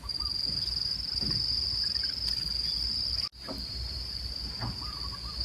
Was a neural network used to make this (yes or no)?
no